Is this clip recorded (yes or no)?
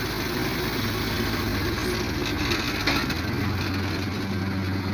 yes